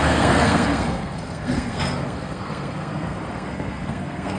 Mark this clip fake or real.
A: fake